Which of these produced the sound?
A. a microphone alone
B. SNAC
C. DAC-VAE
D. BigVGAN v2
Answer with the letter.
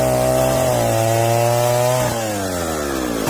A